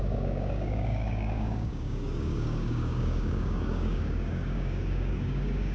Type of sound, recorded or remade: remade